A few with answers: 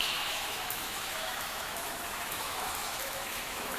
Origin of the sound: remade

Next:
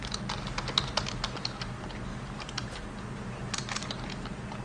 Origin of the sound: recorded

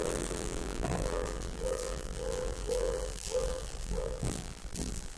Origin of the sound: remade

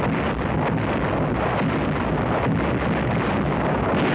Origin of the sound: recorded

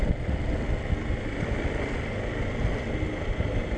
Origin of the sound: recorded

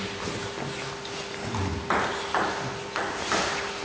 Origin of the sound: recorded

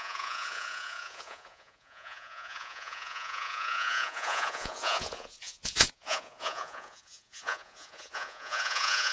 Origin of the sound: remade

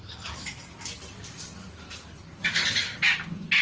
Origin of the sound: recorded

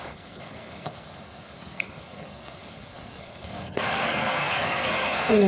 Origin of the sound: remade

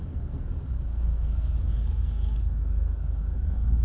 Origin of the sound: remade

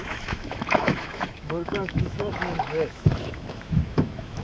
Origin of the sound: remade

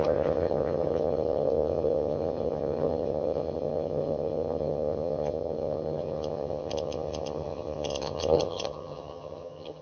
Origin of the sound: remade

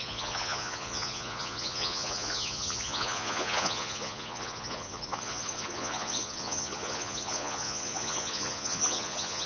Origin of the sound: remade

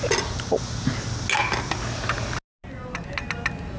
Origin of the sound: recorded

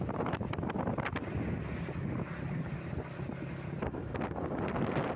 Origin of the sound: recorded